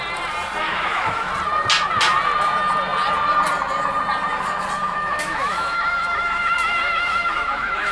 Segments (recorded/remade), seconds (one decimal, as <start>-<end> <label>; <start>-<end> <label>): 0.0-0.6 recorded; 0.6-1.3 remade; 1.3-4.8 recorded; 4.8-7.9 remade